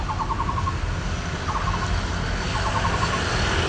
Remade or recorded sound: recorded